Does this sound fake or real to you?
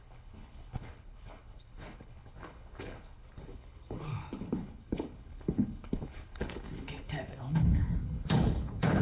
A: fake